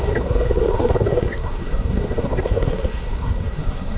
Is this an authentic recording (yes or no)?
no